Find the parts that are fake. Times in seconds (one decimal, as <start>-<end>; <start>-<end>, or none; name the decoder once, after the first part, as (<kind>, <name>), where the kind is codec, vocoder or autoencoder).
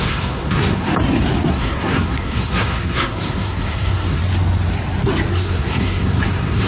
0.0-0.9 (codec, SNAC); 1.5-4.2; 5.3-6.7